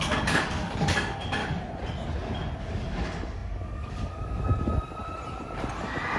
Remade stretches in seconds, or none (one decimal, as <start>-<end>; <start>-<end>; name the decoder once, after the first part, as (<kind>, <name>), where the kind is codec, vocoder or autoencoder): 0.0-1.4 (codec, DAC); 2.6-4.7

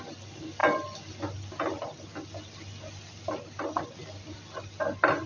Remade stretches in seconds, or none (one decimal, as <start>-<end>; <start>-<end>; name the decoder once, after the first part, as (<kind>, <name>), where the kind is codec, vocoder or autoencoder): none